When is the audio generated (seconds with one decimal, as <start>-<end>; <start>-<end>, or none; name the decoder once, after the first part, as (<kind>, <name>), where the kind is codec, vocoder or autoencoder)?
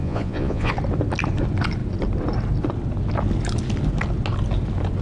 0.0-0.7 (vocoder, Vocos)